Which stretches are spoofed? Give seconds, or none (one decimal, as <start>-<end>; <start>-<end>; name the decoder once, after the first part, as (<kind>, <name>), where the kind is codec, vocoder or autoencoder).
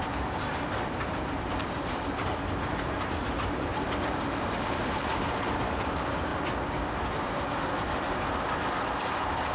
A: 0.0-3.7 (vocoder, BigVGAN v2); 4.3-6.3; 8.1-9.5